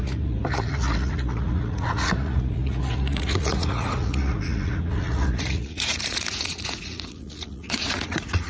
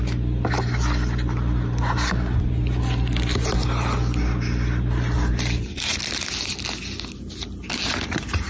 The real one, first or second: second